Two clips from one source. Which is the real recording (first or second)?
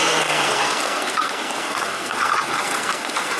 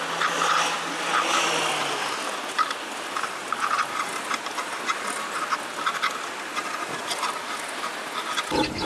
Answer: second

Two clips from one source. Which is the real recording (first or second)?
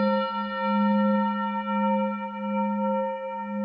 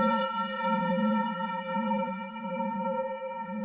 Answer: first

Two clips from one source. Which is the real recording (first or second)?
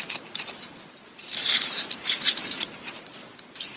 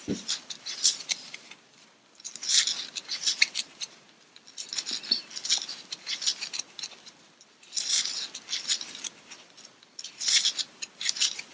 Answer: second